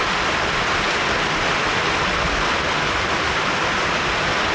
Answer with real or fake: real